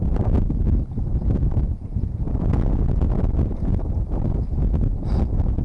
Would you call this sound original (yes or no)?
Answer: yes